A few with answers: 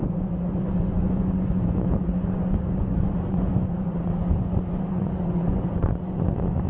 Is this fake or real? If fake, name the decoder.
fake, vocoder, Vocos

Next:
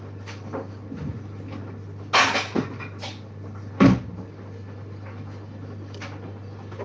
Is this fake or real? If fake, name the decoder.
real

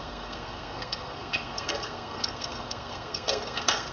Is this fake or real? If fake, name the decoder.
fake, codec, SNAC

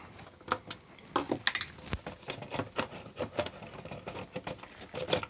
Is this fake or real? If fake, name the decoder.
real